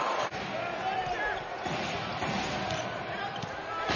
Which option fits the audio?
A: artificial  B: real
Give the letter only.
B